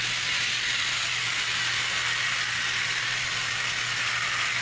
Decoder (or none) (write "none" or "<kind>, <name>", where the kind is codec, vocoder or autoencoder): none